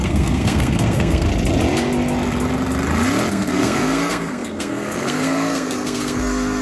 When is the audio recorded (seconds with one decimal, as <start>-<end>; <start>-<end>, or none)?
1.3-3.3